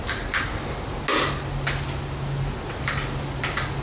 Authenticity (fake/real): real